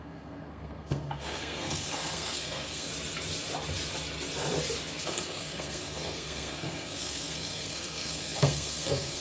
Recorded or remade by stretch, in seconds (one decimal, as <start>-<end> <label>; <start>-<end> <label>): 0.0-2.9 remade; 2.9-5.0 recorded; 5.0-9.2 remade